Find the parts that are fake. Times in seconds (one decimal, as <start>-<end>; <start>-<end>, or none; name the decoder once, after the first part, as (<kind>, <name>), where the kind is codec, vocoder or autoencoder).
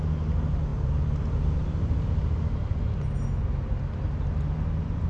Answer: none